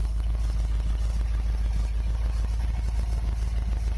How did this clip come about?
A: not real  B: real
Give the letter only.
B